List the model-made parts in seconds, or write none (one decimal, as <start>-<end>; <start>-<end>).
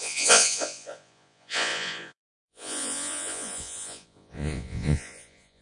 0.0-5.6